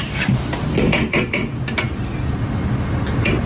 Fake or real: real